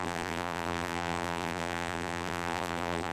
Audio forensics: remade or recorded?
remade